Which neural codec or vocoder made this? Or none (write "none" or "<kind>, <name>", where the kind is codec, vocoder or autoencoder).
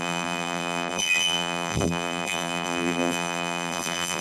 vocoder, BigVGAN v2